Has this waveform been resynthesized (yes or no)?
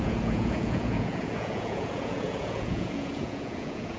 yes